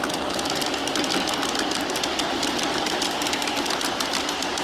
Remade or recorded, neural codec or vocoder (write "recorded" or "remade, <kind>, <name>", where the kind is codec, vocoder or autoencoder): recorded